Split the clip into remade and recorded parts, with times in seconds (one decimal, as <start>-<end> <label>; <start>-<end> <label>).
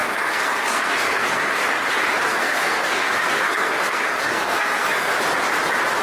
0.0-1.6 remade; 1.6-2.3 recorded; 2.3-5.1 remade; 5.1-6.0 recorded